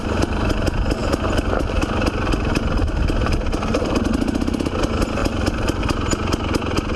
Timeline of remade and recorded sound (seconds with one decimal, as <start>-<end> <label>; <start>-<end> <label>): 0.0-7.0 recorded